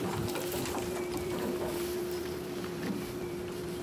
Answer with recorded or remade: remade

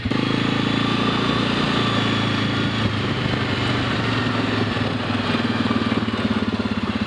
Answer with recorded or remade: recorded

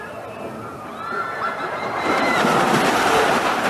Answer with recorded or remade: recorded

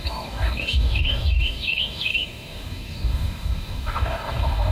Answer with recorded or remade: remade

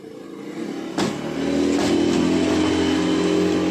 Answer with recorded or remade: recorded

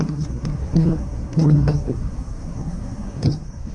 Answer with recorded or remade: remade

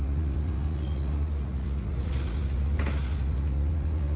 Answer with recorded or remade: remade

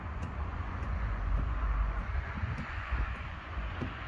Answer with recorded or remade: remade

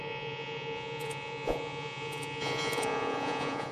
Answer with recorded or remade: remade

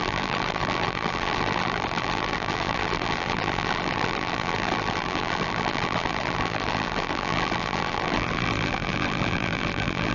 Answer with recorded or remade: remade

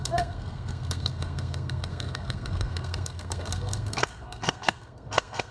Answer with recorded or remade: remade